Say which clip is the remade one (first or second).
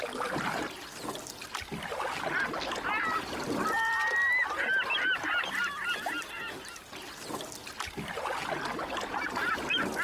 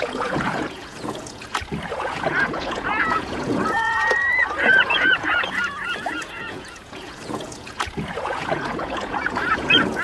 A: second